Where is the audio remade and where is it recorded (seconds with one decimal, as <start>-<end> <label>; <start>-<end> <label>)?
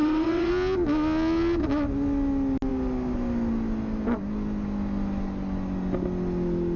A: 0.0-0.5 remade; 0.5-6.8 recorded